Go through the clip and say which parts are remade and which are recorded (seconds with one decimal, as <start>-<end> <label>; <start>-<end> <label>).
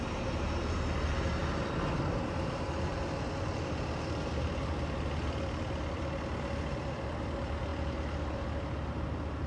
0.0-9.5 recorded